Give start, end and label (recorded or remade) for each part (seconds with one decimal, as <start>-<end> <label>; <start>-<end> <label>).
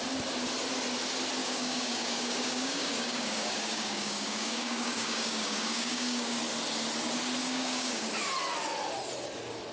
0.0-1.4 recorded; 1.4-6.4 remade; 6.4-7.4 recorded; 7.4-8.1 remade; 8.1-9.7 recorded